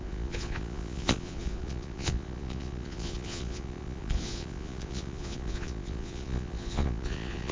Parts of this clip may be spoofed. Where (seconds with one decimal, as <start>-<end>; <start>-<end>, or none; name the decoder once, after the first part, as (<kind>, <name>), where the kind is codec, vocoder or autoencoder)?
0.0-7.5 (vocoder, Vocos)